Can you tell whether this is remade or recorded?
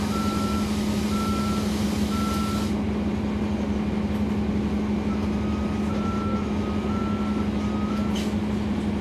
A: recorded